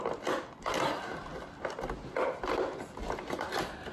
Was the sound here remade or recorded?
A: recorded